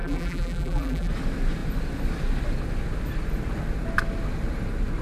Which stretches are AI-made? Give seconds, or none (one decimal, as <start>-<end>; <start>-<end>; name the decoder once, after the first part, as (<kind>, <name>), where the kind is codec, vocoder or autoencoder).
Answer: 0.0-1.1 (vocoder, BigVGAN v2)